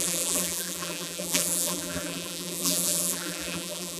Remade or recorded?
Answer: remade